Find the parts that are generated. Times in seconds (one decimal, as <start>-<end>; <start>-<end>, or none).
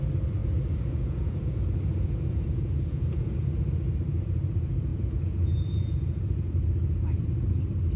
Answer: 0.4-3.5; 4.9-6.5